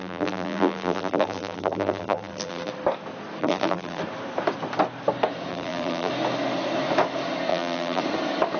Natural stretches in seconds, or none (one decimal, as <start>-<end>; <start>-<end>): 2.7-3.4; 4.0-5.5; 6.1-7.5; 8.0-8.6